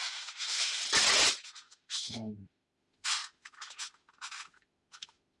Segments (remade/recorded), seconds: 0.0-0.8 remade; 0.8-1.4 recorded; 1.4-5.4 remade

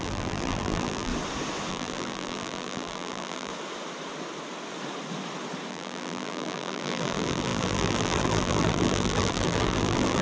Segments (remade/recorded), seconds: 0.0-1.1 remade; 1.1-1.7 recorded; 1.7-3.5 remade; 3.5-5.7 recorded; 5.7-10.2 remade

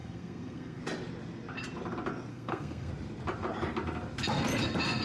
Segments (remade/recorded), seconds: 0.0-0.8 remade; 0.8-2.3 recorded; 2.3-2.9 remade; 2.9-5.0 recorded

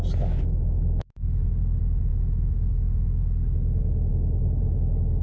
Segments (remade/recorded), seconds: 0.0-2.1 recorded; 2.1-2.7 remade; 2.7-5.2 recorded

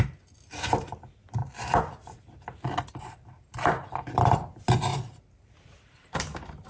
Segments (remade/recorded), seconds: 0.0-4.9 recorded; 4.9-6.7 remade